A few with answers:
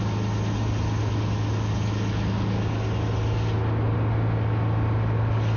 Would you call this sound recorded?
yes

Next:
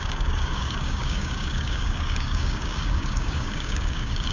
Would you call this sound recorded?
no